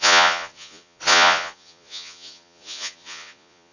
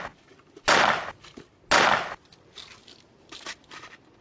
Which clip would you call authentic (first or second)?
second